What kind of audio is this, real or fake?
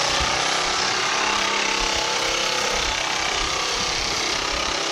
real